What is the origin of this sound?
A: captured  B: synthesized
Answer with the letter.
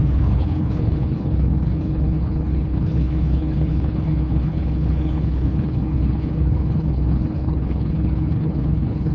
B